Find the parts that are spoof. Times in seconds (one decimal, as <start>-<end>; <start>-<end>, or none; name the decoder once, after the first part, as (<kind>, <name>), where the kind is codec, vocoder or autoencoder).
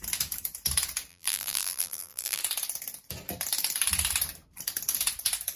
1.1-2.4 (vocoder, BigVGAN v2)